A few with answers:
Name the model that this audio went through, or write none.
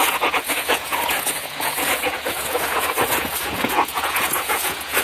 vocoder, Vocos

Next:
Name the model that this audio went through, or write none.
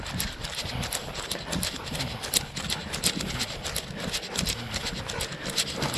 none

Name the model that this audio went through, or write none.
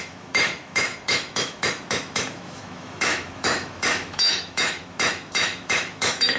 autoencoder, DAC-VAE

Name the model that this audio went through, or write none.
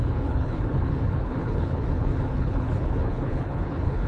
codec, HILCodec